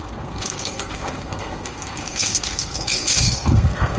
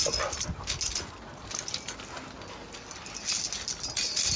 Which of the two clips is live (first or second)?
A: second